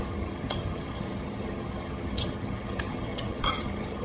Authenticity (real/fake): fake